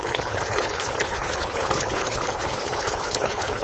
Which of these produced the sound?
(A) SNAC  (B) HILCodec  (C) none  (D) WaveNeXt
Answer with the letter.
B